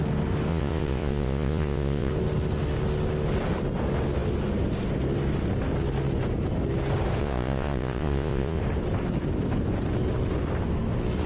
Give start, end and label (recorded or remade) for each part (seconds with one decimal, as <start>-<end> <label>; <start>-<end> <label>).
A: 0.0-0.5 recorded; 0.5-2.1 remade; 2.1-7.2 recorded; 7.2-8.6 remade; 8.6-11.3 recorded